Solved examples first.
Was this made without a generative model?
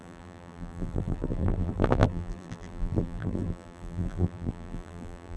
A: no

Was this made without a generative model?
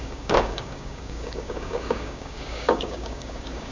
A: no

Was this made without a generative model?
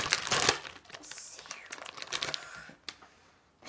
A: yes